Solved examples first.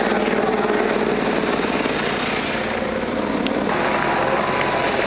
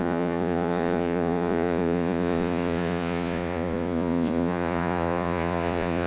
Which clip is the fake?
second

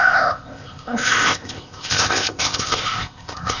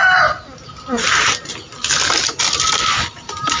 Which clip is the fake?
first